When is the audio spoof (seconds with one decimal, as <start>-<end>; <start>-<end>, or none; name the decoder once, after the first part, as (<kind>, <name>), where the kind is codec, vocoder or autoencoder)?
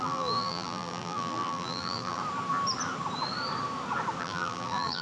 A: 0.0-2.2 (vocoder, BigVGAN v2); 4.2-5.0